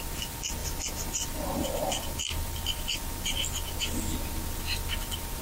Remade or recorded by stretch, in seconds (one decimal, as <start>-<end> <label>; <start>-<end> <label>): 0.0-5.4 recorded